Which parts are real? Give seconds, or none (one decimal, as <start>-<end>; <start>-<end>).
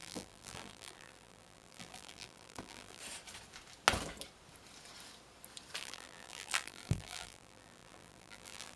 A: 3.0-5.8